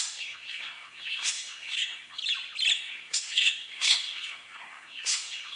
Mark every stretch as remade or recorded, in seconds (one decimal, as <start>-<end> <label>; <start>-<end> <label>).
0.0-2.2 remade; 2.2-2.8 recorded; 2.8-5.6 remade